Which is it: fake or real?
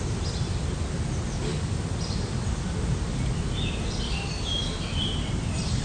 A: real